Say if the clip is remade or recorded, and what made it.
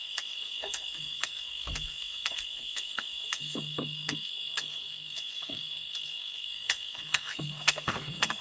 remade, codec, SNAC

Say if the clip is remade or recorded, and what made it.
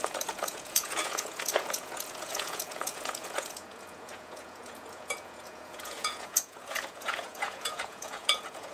remade, vocoder, Vocos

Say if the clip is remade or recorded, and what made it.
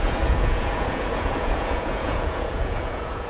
remade, vocoder, Vocos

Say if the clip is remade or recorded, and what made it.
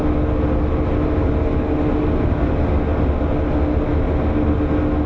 recorded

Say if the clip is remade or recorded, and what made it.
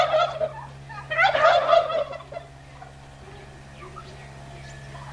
recorded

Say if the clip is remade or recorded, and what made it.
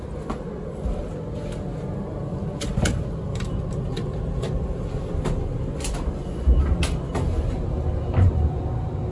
recorded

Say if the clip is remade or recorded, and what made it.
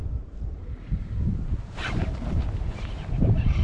remade, vocoder, BigVGAN v2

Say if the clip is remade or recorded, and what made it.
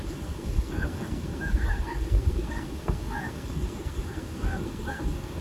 remade, codec, SNAC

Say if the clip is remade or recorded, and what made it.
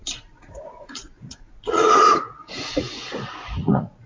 remade, vocoder, Vocos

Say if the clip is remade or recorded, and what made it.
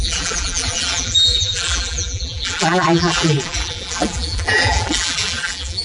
remade, vocoder, BigVGAN v2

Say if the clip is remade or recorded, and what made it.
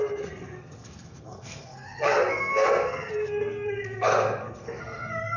remade, codec, SNAC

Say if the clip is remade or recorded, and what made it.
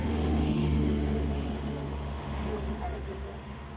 remade, autoencoder, DAC-VAE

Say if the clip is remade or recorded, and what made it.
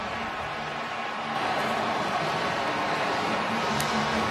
remade, vocoder, BigVGAN v2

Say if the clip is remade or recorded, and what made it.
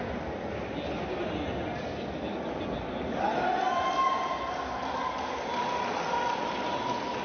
recorded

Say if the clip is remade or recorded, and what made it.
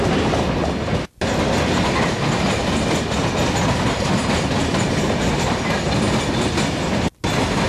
recorded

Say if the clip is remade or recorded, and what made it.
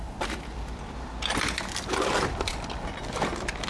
remade, vocoder, BigVGAN v2